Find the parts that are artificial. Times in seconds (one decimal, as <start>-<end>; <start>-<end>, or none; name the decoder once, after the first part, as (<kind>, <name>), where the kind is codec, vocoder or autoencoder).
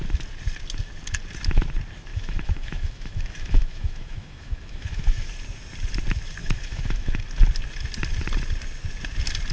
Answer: 2.1-5.3 (autoencoder, DAC-VAE); 6.4-7.2